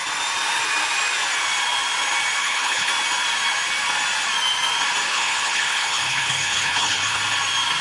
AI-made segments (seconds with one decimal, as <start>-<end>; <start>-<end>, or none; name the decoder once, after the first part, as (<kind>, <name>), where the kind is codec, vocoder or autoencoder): 2.4-2.9 (codec, HILCodec); 5.1-7.2

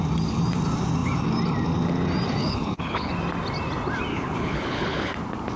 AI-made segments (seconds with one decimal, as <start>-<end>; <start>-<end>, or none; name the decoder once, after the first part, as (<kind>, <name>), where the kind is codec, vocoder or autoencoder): 2.4-3.1 (codec, HILCodec); 4.1-5.1